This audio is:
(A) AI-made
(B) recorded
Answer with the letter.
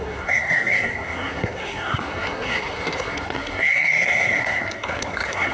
A